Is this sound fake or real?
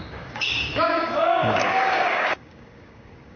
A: fake